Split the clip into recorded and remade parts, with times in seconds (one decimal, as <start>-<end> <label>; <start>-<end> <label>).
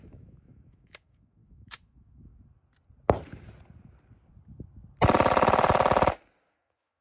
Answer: 0.0-2.3 remade; 2.3-6.5 recorded; 6.5-7.0 remade